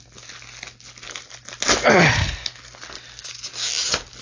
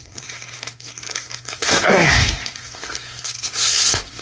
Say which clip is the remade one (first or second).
second